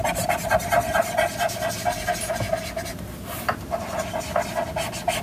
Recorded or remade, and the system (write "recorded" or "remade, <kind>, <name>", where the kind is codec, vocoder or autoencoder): recorded